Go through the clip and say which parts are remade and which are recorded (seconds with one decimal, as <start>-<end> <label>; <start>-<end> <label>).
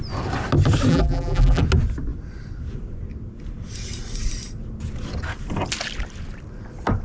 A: 0.0-0.9 recorded; 0.9-1.6 remade; 1.6-7.0 recorded